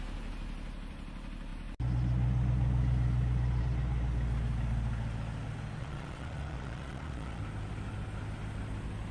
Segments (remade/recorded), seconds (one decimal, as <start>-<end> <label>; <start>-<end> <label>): 0.0-5.8 recorded; 5.8-7.4 remade; 7.4-9.1 recorded